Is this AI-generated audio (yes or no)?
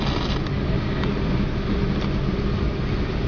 no